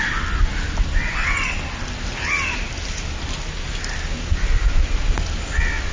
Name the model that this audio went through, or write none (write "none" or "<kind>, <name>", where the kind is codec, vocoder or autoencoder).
none